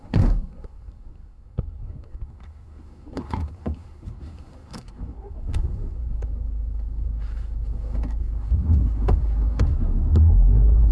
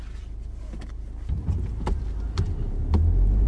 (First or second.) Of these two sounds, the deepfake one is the first